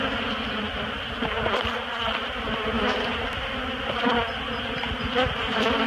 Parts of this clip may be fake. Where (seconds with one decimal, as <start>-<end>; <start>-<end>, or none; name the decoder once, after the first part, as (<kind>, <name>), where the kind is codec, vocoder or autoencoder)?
none